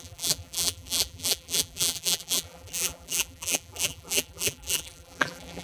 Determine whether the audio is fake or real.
fake